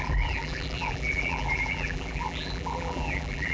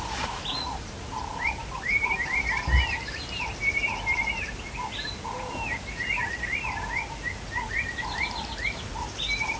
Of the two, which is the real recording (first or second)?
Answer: second